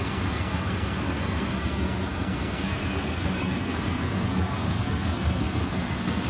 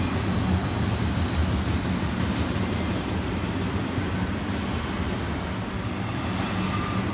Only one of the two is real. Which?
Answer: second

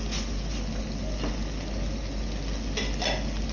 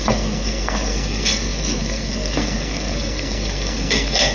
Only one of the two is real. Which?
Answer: first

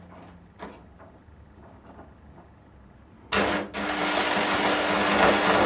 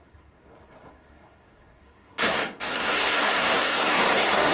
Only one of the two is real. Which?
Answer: first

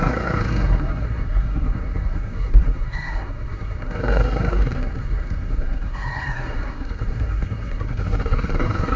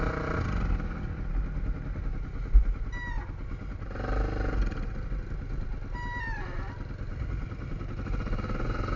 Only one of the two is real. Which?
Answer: second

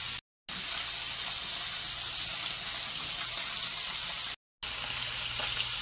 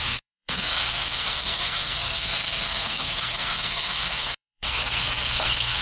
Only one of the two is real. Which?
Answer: first